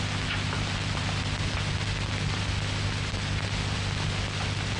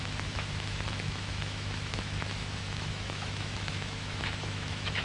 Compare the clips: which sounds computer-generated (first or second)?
second